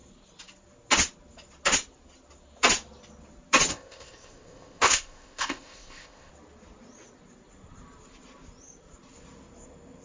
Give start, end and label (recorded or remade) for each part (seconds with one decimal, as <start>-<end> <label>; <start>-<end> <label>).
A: 0.0-3.7 recorded; 3.7-6.3 remade; 6.3-10.0 recorded